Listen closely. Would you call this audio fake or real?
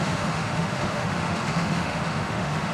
fake